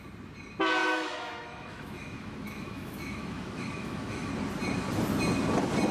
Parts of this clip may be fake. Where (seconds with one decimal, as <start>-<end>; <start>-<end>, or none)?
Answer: 0.8-4.3